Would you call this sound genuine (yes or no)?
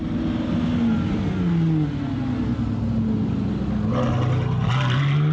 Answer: yes